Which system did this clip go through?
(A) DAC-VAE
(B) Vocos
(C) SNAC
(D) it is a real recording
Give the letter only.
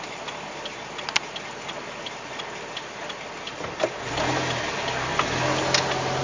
D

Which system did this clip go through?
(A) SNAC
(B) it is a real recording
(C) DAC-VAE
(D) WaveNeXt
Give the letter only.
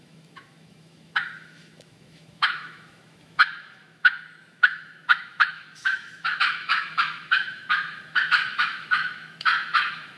C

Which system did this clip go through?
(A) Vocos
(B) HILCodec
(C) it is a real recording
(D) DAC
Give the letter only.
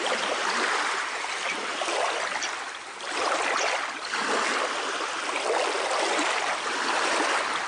C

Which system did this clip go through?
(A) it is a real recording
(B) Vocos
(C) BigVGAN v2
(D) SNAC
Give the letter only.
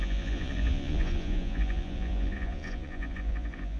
B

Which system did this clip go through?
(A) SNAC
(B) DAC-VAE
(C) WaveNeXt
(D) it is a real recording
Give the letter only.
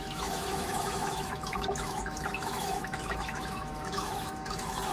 B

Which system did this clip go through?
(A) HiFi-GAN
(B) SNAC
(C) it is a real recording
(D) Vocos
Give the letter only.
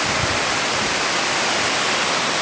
C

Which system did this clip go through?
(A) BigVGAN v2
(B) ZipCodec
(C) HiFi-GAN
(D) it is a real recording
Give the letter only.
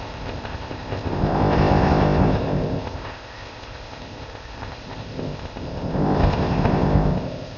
B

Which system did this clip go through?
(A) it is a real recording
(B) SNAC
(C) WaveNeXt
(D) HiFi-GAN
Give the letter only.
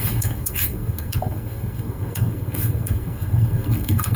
B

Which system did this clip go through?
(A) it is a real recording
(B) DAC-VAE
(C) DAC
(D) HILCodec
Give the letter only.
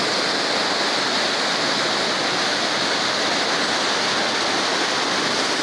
A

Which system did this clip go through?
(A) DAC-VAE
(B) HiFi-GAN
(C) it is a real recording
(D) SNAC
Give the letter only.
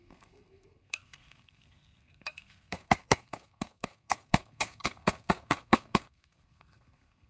D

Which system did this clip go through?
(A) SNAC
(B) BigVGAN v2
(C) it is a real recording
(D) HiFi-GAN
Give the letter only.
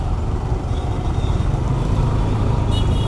B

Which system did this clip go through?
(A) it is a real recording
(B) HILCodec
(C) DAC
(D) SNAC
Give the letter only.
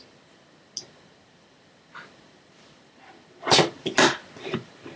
A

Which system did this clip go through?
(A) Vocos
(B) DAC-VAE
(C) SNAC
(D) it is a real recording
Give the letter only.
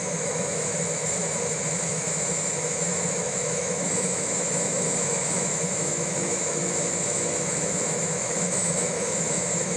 B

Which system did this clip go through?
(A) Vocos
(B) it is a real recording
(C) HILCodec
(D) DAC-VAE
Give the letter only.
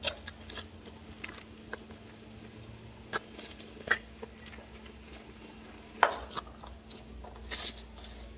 B